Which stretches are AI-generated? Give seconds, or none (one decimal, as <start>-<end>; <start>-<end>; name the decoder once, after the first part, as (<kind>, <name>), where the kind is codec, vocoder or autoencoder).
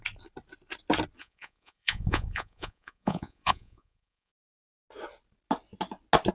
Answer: 1.2-4.4 (vocoder, Vocos)